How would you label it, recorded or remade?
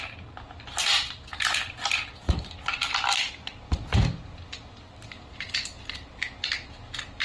recorded